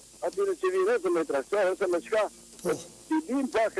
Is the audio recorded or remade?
recorded